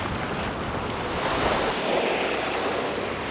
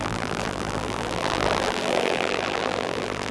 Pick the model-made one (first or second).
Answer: second